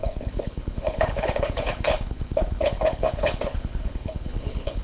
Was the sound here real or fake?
fake